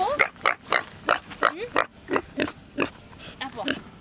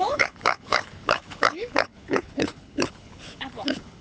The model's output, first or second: second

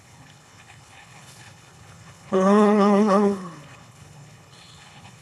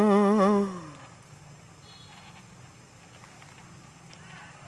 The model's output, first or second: first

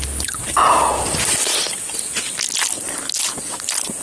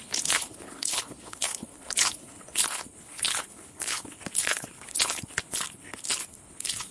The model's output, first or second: second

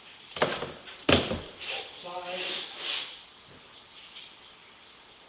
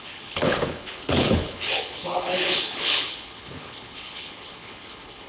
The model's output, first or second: second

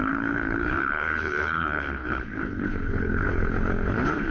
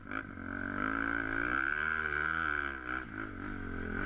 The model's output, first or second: first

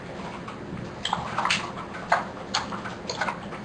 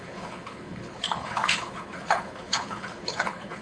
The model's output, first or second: second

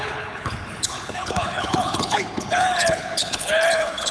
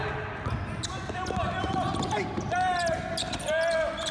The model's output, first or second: first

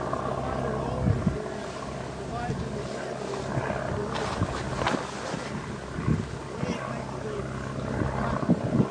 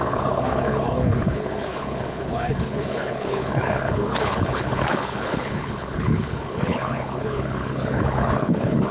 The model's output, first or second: second